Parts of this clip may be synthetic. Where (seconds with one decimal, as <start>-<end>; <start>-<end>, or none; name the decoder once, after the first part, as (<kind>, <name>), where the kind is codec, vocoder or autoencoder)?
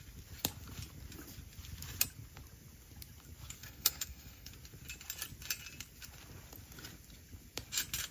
3.6-4.5 (codec, SNAC)